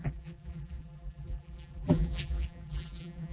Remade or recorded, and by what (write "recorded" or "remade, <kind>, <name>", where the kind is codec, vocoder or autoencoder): remade, vocoder, BigVGAN v2